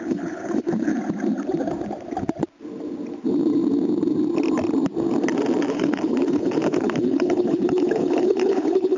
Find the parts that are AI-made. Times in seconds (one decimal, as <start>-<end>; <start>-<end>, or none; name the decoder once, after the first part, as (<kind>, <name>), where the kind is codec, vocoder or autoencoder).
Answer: 0.0-0.9 (codec, HILCodec); 5.7-9.0